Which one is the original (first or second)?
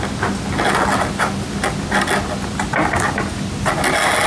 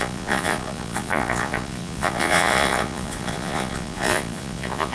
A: first